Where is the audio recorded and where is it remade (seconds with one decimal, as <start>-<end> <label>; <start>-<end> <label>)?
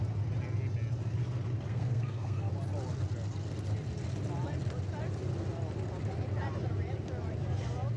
0.0-1.7 recorded; 1.7-2.5 remade; 2.5-8.0 recorded